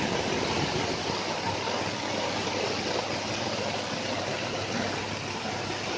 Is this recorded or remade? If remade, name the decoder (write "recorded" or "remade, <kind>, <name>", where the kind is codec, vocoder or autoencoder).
recorded